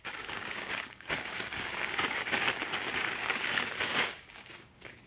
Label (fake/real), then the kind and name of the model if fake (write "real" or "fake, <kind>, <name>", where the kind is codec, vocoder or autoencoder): fake, codec, DAC